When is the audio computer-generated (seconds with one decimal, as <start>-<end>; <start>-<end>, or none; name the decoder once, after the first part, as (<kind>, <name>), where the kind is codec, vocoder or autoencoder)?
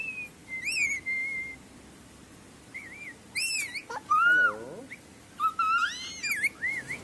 none